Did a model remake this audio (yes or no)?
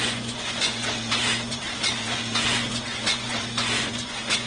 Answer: yes